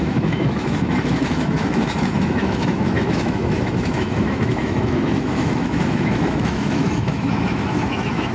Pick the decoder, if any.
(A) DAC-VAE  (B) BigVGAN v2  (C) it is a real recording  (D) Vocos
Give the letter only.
A